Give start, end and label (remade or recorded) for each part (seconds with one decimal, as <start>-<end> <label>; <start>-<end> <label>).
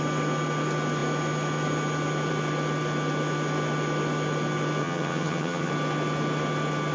0.0-4.8 recorded; 4.8-5.7 remade; 5.7-6.9 recorded